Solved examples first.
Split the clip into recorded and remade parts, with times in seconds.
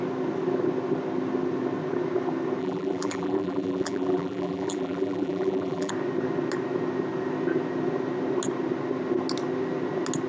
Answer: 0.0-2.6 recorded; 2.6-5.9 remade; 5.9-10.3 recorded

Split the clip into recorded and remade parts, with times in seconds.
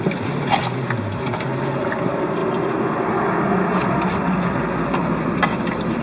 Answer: 0.0-6.0 recorded